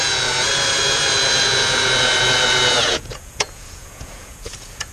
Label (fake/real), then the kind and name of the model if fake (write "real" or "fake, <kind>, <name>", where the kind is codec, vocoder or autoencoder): fake, vocoder, Vocos